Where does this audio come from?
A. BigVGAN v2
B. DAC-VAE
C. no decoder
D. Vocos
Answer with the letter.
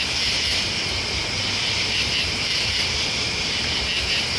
C